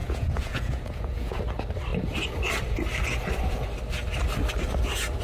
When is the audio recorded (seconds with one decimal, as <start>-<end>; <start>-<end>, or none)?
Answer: 1.4-5.2